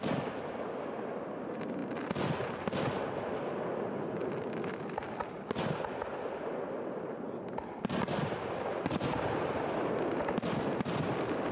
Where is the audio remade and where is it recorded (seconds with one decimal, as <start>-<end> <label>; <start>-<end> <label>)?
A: 0.0-11.5 recorded